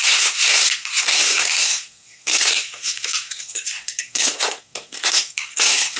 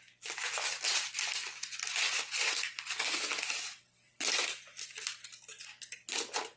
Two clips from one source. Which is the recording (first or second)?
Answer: second